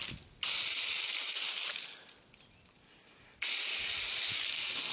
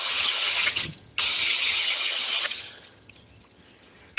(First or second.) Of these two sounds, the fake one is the second